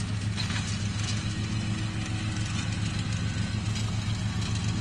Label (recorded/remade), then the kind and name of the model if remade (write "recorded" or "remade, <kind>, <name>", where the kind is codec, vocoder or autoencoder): recorded